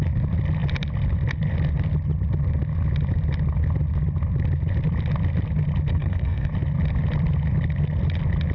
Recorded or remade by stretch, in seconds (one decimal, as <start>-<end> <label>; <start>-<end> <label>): 0.0-5.9 recorded; 5.9-6.5 remade; 6.5-8.5 recorded